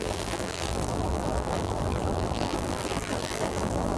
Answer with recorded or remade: remade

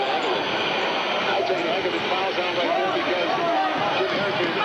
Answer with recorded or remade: recorded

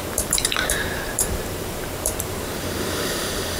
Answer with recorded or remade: remade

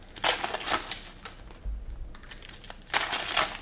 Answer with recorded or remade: recorded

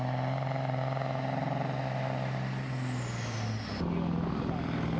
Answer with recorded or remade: recorded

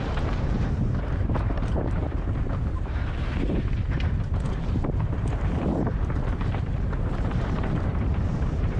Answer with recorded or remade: remade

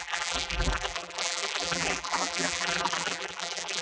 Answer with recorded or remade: remade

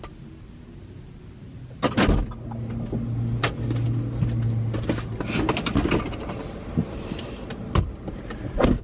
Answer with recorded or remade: recorded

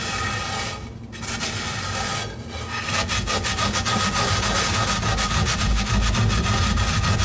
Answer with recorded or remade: recorded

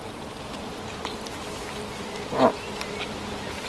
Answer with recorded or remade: recorded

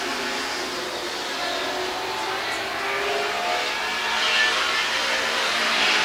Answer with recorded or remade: recorded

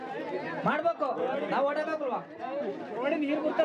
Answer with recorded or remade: recorded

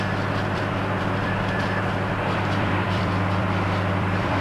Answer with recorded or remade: remade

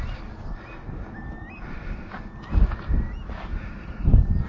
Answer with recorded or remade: recorded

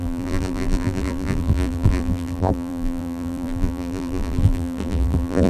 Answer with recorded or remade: remade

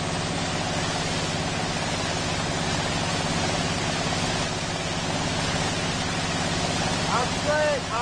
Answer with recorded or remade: recorded